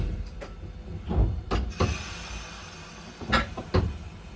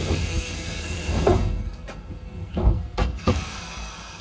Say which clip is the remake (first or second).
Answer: second